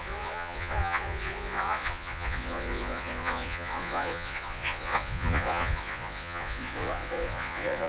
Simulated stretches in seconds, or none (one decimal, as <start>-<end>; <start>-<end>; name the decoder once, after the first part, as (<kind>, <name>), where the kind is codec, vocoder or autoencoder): 0.0-7.9 (vocoder, Vocos)